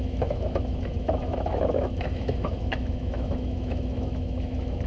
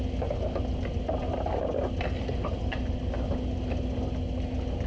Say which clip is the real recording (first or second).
second